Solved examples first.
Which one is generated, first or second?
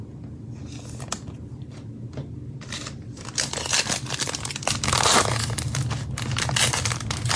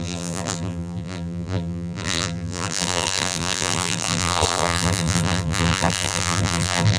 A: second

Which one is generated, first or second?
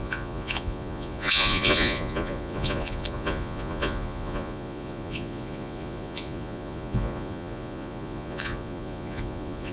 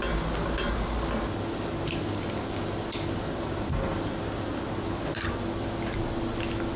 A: first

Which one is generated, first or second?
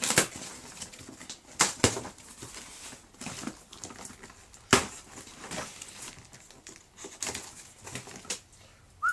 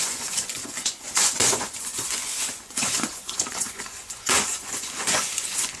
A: second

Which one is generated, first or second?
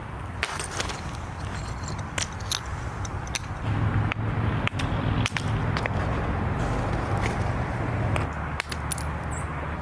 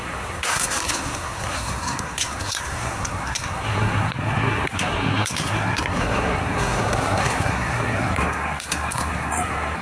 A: second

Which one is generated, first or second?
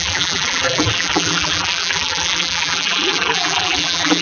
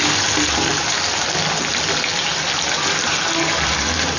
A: first